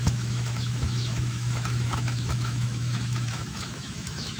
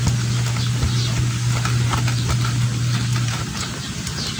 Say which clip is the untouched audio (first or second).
second